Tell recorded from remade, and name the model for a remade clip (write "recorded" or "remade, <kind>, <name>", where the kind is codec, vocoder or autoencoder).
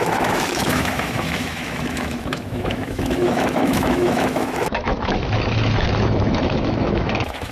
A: remade, autoencoder, DAC-VAE